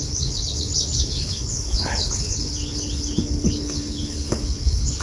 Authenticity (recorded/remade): remade